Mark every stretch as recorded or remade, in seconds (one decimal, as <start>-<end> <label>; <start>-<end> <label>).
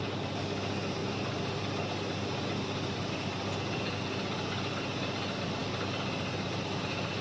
0.0-7.2 recorded